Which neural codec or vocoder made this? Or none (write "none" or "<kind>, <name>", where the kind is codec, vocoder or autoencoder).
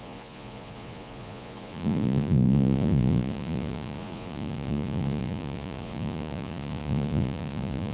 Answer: vocoder, Vocos